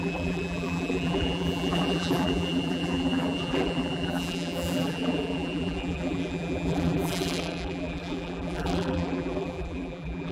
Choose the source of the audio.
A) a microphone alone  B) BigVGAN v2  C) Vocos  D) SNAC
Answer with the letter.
B